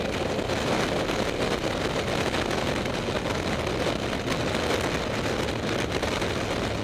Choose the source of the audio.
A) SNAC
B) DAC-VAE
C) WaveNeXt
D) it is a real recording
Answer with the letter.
D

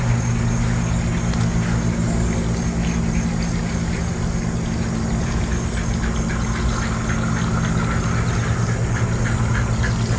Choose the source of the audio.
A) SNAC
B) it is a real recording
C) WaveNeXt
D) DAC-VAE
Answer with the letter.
B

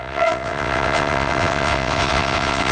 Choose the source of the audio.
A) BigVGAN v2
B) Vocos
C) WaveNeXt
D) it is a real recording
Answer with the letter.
C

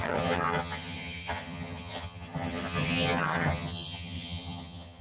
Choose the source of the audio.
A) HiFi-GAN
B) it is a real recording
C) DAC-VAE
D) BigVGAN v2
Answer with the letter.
A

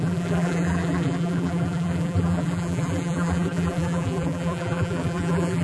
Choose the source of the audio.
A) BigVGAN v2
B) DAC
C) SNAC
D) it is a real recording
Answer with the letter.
A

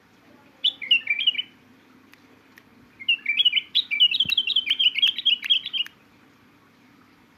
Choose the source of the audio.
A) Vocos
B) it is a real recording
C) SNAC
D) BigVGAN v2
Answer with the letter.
B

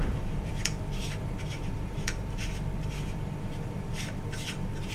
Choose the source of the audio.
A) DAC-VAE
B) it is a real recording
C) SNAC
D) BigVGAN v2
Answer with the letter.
D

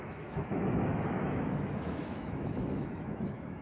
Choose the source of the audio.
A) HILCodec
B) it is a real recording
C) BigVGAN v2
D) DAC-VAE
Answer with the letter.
D